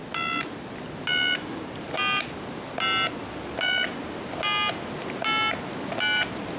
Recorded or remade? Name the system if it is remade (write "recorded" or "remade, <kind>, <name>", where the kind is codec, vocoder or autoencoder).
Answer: recorded